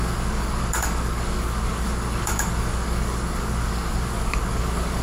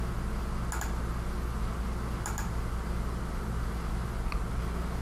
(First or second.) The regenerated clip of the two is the first